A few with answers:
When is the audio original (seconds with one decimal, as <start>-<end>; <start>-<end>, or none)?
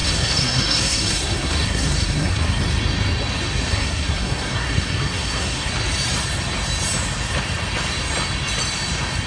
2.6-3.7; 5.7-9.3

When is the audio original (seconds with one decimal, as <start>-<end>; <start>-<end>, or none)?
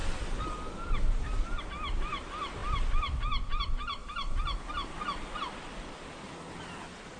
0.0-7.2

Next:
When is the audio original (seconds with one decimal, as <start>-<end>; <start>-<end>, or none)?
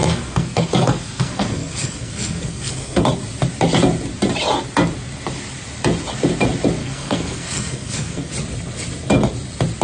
3.0-6.8; 8.3-9.8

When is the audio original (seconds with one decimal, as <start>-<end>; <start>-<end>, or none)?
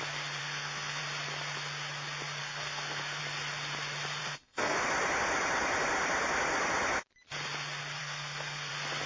0.0-0.4; 1.0-2.4; 3.2-4.2; 4.8-8.0; 8.7-9.1